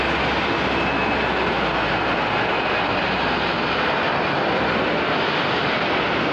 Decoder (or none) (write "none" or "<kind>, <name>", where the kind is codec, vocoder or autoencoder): none